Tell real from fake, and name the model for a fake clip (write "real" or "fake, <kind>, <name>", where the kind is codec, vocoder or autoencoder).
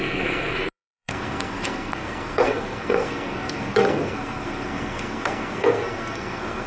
fake, codec, SNAC